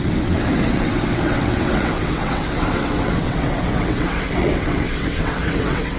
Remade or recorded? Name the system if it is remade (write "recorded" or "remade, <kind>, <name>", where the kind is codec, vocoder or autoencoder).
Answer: remade, vocoder, WaveNeXt